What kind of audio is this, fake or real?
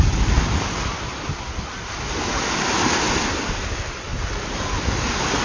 real